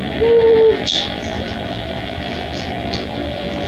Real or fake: fake